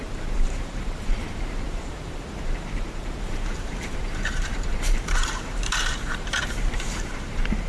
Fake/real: fake